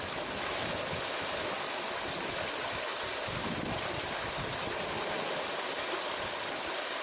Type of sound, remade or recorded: recorded